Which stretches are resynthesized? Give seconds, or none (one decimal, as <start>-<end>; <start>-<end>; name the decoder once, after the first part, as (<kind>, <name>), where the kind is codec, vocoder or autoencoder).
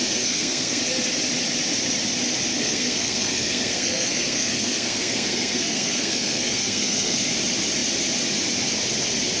0.0-0.8 (codec, SNAC); 2.5-7.3